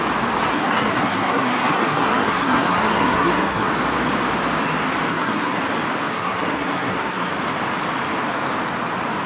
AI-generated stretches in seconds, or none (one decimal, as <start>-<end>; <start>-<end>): 0.5-3.7; 5.1-5.6; 6.1-7.3